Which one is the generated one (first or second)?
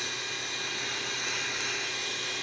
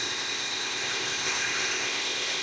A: second